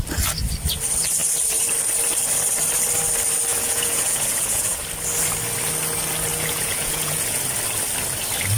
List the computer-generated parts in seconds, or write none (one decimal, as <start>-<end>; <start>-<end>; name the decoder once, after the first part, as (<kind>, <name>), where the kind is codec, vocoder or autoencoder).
3.5-4.8 (vocoder, Vocos); 6.3-7.4